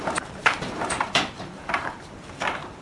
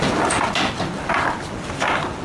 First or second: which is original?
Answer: second